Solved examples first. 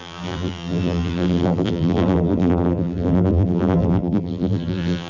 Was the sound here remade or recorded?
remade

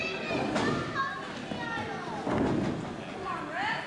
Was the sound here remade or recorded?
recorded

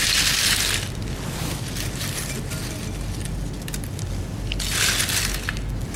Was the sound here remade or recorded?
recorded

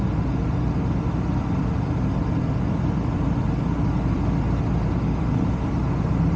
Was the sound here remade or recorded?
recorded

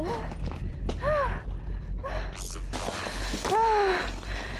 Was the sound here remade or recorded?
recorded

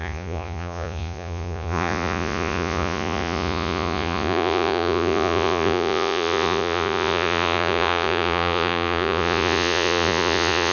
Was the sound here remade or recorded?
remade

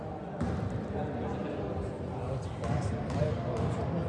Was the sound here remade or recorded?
recorded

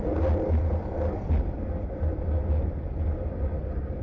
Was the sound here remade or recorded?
recorded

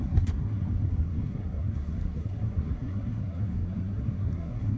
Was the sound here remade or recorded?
remade